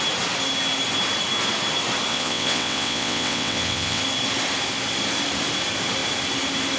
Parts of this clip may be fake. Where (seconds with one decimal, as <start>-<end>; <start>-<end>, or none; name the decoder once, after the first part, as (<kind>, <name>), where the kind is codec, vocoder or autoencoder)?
2.1-4.0 (vocoder, WaveNeXt)